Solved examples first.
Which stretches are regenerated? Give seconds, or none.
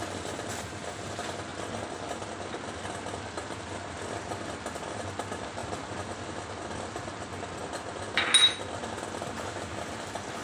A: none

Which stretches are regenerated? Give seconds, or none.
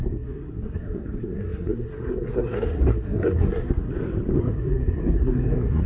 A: 0.0-3.9 (codec, SNAC); 4.4-5.9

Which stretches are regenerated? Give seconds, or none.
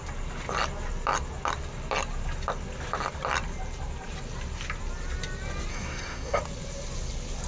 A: 5.7-6.4 (codec, SNAC)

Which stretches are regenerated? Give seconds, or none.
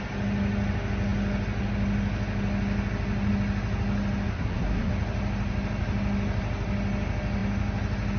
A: 4.3-4.9 (codec, SNAC)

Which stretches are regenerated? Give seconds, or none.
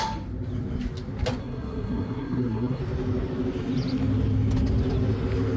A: 1.4-2.8 (codec, SNAC)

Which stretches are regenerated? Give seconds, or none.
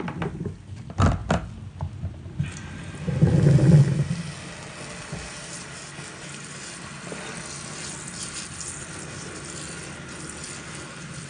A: none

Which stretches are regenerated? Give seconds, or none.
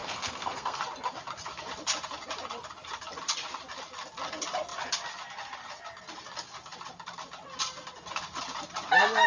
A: 0.0-0.8 (codec, SNAC)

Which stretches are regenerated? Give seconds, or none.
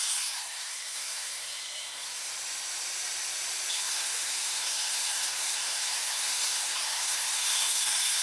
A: 0.0-2.3 (codec, SNAC); 3.7-8.2